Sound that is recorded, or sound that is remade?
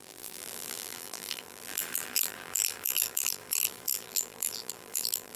remade